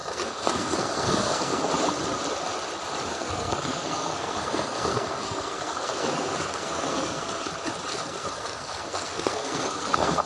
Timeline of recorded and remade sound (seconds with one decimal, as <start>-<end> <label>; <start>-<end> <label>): 0.0-1.7 remade; 1.7-3.1 recorded; 3.1-7.5 remade; 7.5-7.9 recorded; 7.9-10.3 remade